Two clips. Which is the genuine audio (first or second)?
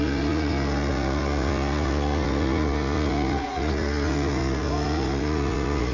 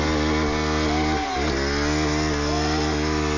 second